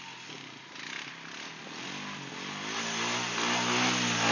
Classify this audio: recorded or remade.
recorded